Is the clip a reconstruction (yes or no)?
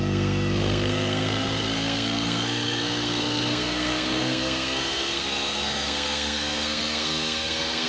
yes